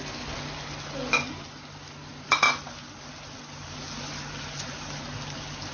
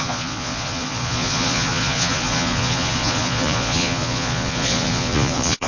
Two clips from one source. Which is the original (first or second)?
first